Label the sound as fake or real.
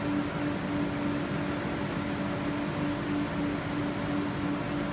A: real